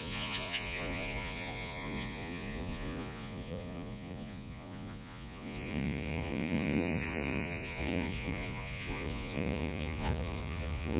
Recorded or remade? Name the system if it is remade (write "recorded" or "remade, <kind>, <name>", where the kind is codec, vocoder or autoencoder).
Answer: remade, vocoder, Vocos